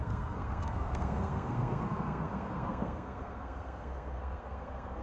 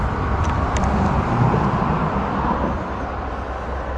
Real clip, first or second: second